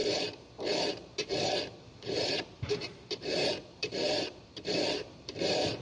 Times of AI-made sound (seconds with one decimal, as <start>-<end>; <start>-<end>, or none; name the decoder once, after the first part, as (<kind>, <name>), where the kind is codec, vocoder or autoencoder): 0.0-5.8 (vocoder, BigVGAN v2)